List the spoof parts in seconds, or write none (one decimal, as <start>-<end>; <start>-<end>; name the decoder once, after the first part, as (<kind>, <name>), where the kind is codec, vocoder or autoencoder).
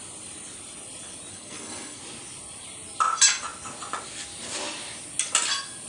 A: 1.3-2.0 (codec, SNAC)